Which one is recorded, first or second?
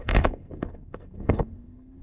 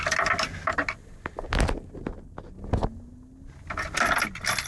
second